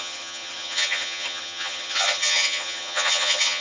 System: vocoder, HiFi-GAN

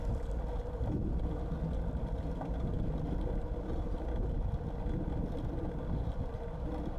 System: none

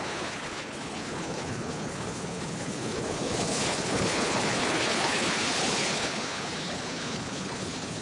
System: codec, HILCodec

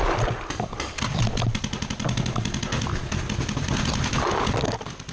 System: none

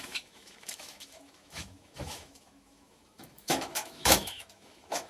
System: autoencoder, DAC-VAE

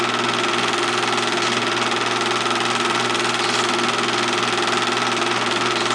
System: none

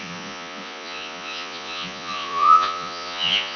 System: vocoder, Vocos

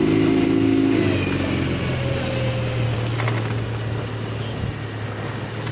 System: none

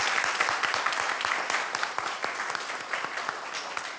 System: none